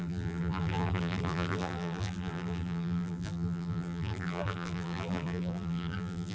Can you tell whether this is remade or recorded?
remade